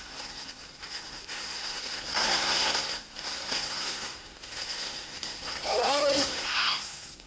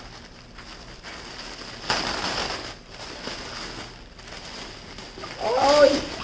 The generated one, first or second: first